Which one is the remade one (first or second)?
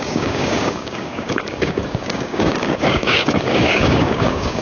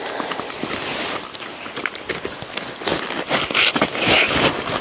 first